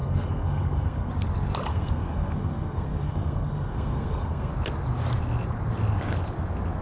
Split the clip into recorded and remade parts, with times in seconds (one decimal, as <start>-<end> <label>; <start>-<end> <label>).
0.0-1.1 remade; 1.1-1.7 recorded; 1.7-4.5 remade; 4.5-6.8 recorded